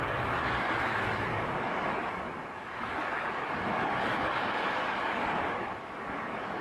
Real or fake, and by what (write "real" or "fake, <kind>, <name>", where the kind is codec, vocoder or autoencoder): fake, codec, DAC